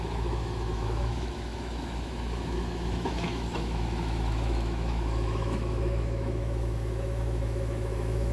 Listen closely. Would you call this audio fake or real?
fake